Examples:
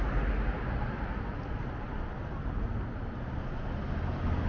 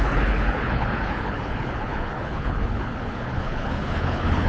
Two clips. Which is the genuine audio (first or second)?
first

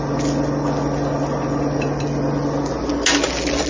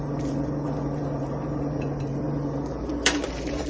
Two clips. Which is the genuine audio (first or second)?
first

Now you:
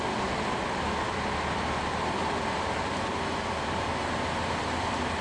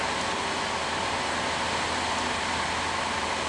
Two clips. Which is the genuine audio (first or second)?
second